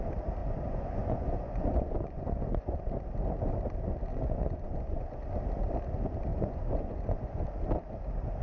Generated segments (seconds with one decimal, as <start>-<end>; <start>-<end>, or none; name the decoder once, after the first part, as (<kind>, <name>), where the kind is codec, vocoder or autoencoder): 0.4-2.8 (vocoder, Vocos); 4.1-5.3; 6.3-7.4